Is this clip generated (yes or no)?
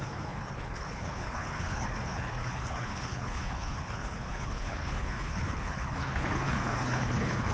yes